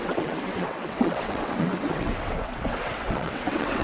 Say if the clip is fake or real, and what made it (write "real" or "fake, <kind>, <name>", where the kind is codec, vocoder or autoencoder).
fake, vocoder, WaveNeXt